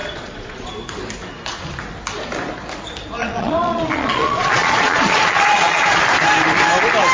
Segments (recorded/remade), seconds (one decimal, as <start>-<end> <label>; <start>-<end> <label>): 0.0-0.7 remade; 0.7-3.2 recorded; 3.2-6.0 remade; 6.0-7.1 recorded